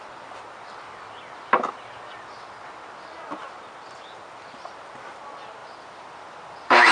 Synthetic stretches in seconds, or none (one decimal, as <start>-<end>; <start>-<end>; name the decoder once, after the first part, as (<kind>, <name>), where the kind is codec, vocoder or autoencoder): none